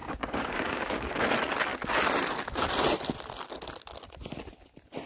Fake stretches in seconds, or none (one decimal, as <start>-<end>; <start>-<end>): 0.0-1.2